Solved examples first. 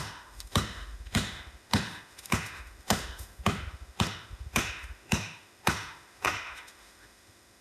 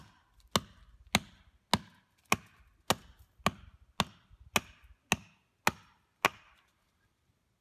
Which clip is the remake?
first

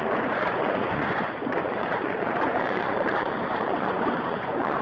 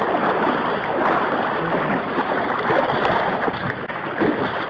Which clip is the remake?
first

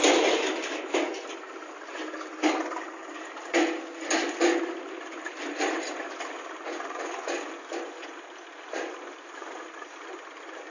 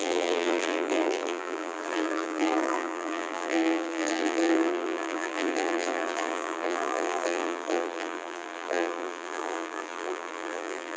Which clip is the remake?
second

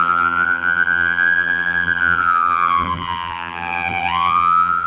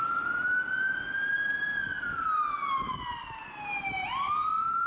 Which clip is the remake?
first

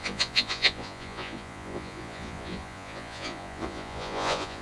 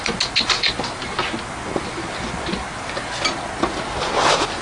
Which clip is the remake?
first